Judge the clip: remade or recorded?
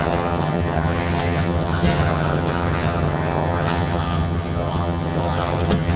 remade